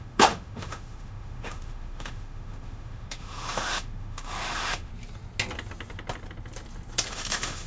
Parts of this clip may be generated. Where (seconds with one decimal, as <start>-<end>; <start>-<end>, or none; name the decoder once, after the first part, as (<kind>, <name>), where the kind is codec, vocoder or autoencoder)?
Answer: 0.0-4.9 (autoencoder, DAC-VAE); 7.1-7.7